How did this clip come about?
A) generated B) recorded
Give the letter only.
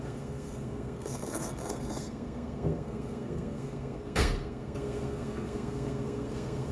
A